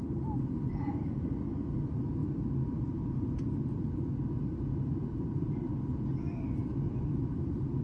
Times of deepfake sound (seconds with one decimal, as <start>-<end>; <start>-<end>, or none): 0.0-6.7; 7.3-7.8